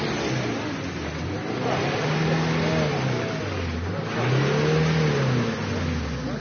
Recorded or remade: recorded